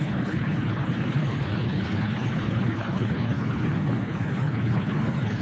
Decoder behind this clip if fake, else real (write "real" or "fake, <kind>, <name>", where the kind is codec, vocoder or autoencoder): fake, codec, HILCodec